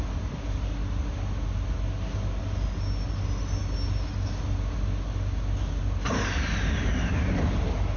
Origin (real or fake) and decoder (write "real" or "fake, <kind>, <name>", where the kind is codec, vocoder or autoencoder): real